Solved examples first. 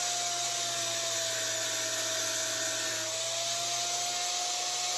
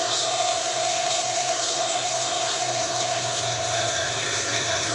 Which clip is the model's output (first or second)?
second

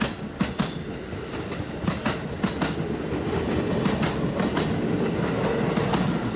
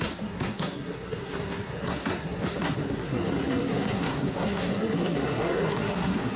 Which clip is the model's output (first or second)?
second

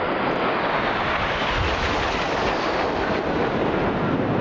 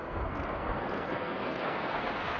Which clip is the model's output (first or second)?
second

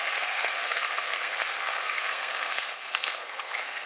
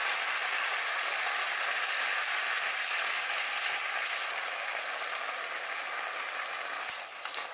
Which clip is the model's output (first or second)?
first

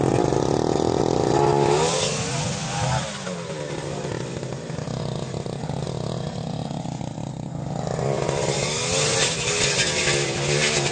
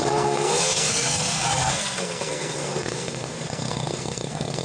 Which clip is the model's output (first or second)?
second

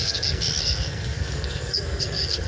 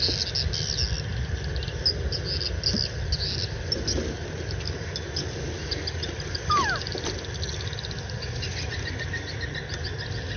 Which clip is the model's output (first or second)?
first